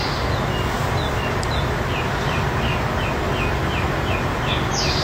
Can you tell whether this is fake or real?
real